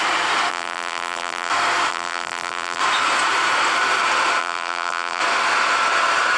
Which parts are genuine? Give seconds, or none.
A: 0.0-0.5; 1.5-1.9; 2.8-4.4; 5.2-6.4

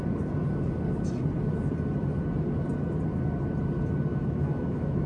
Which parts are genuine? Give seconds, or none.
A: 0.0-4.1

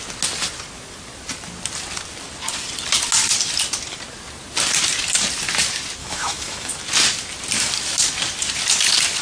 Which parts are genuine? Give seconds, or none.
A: 0.0-6.0; 6.7-9.2

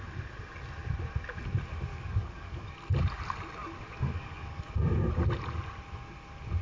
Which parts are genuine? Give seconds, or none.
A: 0.0-1.9; 2.7-3.6; 4.7-6.6